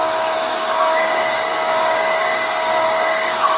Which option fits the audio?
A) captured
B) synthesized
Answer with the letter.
B